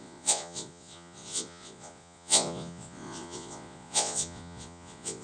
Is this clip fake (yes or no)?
yes